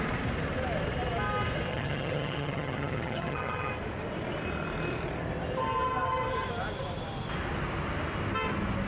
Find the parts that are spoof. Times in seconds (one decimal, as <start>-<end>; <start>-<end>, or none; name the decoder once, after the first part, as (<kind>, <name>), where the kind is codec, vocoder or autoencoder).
1.7-3.7 (vocoder, HiFi-GAN)